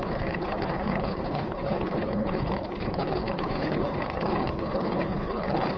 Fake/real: fake